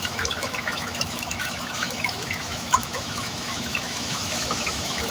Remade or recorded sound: remade